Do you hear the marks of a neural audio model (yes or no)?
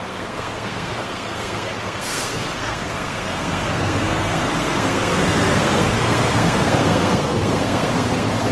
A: yes